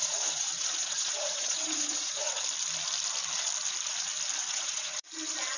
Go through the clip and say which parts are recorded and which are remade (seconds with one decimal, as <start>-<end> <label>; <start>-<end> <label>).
0.0-2.4 remade; 2.4-4.4 recorded; 4.4-5.1 remade; 5.1-5.6 recorded